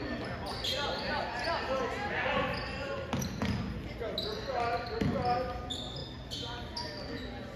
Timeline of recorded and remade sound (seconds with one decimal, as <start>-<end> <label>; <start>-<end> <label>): 0.0-7.6 recorded